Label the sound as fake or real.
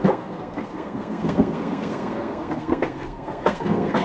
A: fake